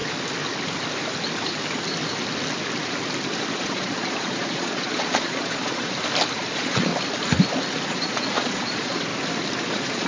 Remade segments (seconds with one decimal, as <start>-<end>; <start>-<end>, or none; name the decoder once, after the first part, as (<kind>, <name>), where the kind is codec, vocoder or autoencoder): 3.5-5.9 (vocoder, Vocos); 6.4-6.9; 7.9-9.1; 9.6-10.1